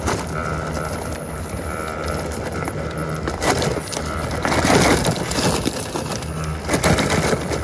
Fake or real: real